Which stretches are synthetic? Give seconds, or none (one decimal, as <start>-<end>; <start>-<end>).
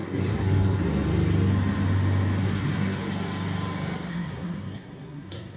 0.0-0.8; 2.4-3.0; 4.1-5.6